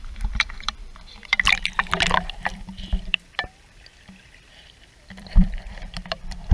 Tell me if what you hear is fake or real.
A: fake